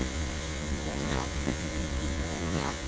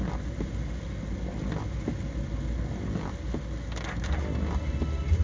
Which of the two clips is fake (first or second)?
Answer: first